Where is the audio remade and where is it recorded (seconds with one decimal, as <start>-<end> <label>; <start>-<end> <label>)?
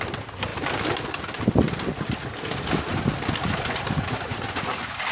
0.0-5.1 recorded